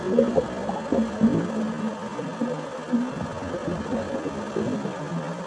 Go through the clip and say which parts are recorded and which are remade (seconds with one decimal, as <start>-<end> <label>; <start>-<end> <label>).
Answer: 0.0-5.5 recorded